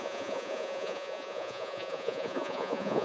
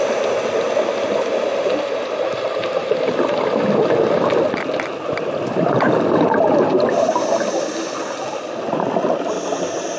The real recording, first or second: second